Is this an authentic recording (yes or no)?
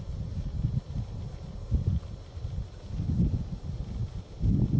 yes